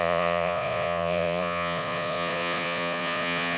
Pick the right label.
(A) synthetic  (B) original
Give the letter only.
A